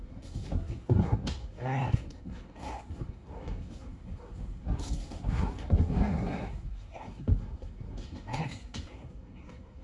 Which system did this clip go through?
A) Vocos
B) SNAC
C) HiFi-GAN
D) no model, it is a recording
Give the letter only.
B